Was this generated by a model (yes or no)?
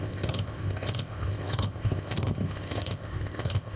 yes